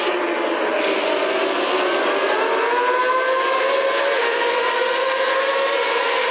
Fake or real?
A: real